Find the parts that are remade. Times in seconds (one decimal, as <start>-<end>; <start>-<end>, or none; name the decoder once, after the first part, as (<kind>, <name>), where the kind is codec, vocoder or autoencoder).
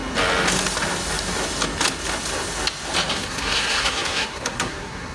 3.1-5.1 (codec, SNAC)